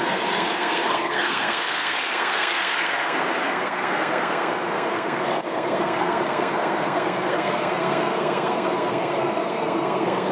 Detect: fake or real fake